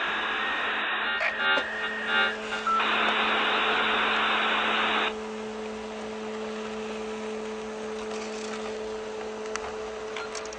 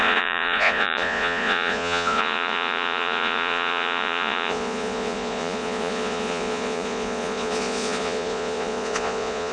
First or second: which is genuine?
first